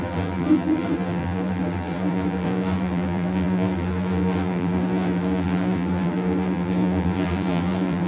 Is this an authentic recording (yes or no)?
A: no